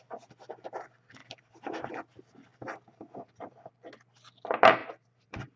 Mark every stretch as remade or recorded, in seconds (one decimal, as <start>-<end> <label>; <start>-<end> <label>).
0.0-1.2 recorded; 1.2-1.9 remade; 1.9-2.5 recorded; 2.5-3.7 remade; 3.7-4.8 recorded; 4.8-5.6 remade